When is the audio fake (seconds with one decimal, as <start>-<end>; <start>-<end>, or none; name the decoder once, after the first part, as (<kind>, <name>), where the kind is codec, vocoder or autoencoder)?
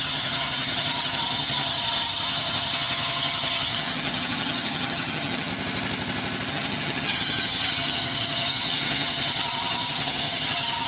0.0-5.5 (vocoder, HiFi-GAN); 6.5-10.9